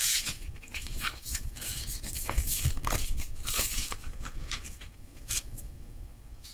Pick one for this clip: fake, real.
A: fake